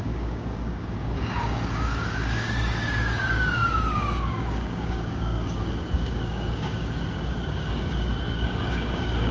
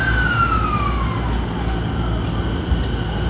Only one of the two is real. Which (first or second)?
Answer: second